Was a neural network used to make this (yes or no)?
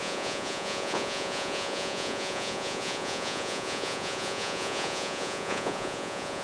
yes